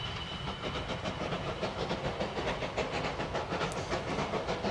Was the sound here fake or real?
real